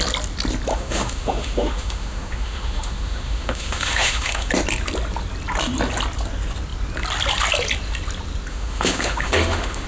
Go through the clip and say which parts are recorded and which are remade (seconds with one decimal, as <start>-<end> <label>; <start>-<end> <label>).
0.0-0.7 recorded; 0.7-4.5 remade; 4.5-8.5 recorded; 8.5-9.9 remade